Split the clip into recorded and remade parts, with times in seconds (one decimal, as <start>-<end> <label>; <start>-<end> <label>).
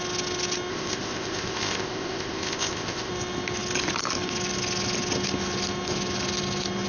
0.0-0.7 recorded; 0.7-3.1 remade; 3.1-6.9 recorded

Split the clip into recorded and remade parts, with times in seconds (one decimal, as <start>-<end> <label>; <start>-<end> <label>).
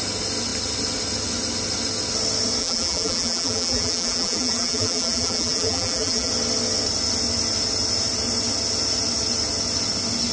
0.0-2.6 recorded; 2.6-6.3 remade; 6.3-10.3 recorded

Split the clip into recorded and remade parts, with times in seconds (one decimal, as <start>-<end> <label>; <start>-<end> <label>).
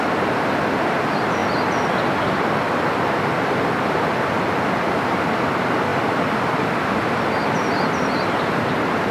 0.0-9.1 recorded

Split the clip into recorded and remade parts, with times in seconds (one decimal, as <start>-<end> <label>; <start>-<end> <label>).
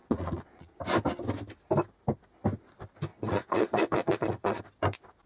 0.0-0.8 remade; 0.8-3.1 recorded; 3.1-4.6 remade; 4.6-5.3 recorded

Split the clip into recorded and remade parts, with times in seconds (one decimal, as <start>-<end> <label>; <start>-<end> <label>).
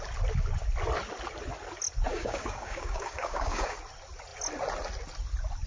0.0-2.1 recorded; 2.1-3.8 remade; 3.8-5.7 recorded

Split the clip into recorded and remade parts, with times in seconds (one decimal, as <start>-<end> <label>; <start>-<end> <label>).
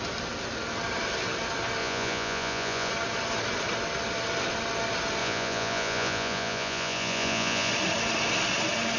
0.0-1.8 recorded; 1.8-2.9 remade; 2.9-5.2 recorded; 5.2-7.7 remade; 7.7-9.0 recorded